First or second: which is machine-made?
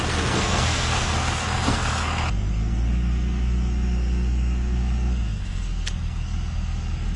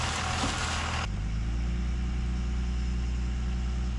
first